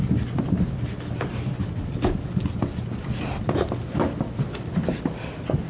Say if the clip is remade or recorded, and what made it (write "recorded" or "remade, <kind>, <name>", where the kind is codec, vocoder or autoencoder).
recorded